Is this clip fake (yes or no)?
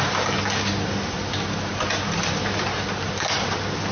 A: no